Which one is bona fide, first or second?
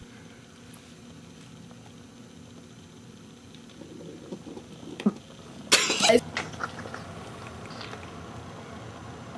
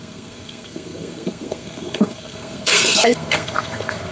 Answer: first